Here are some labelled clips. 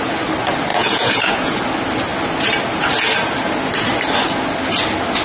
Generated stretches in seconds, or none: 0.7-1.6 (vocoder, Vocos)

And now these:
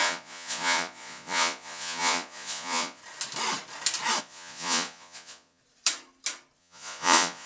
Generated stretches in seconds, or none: 0.0-3.0 (vocoder, Vocos); 4.2-5.6; 6.6-7.5

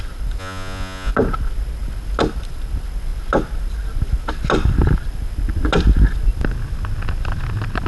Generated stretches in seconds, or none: 0.4-1.1 (vocoder, Vocos)

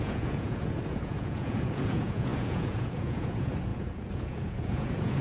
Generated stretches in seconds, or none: 0.0-5.2 (vocoder, Vocos)

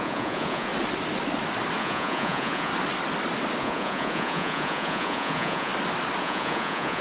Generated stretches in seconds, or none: 0.0-0.7 (vocoder, Vocos); 1.8-2.7; 3.6-5.7; 6.2-7.0

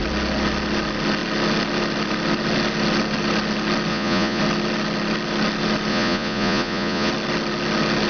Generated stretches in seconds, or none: 3.9-4.4 (vocoder, Vocos); 5.9-7.1